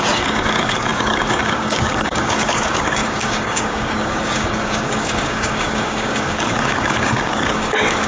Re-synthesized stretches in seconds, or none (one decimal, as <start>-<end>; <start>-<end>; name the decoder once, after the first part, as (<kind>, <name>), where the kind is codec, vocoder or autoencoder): 0.0-8.1 (codec, DAC)